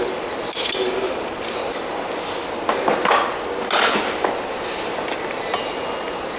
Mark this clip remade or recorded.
recorded